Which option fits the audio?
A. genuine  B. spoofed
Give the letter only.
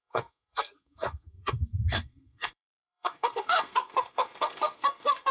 B